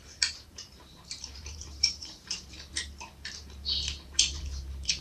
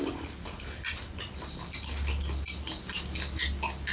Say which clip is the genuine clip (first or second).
second